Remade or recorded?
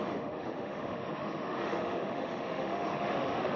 remade